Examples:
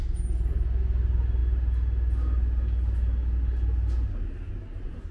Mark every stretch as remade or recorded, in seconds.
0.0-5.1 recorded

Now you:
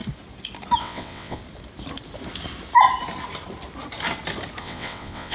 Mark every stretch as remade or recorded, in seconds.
0.0-0.8 recorded; 0.8-1.4 remade; 1.4-4.6 recorded; 4.6-5.3 remade

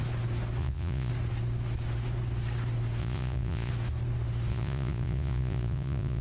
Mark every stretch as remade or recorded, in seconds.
0.0-0.6 recorded; 0.6-1.1 remade; 1.1-3.0 recorded; 3.0-3.7 remade; 3.7-4.5 recorded; 4.5-6.2 remade